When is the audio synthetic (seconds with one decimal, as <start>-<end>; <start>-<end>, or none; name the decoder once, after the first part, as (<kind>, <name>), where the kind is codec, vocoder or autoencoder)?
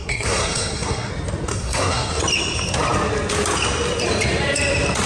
0.0-1.1 (codec, SNAC); 1.5-2.2